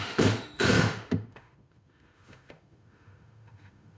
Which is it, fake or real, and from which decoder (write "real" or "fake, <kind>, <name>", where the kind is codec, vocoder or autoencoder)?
fake, autoencoder, DAC-VAE